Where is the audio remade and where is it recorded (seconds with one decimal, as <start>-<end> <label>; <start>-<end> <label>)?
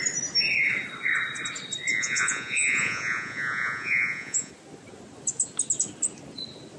0.0-1.9 recorded; 1.9-4.5 remade; 4.5-6.8 recorded